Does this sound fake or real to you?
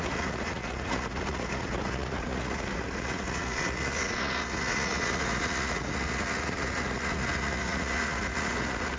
fake